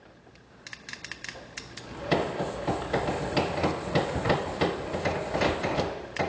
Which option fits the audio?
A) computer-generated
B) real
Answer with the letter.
B